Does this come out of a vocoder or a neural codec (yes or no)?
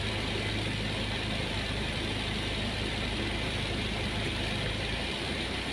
no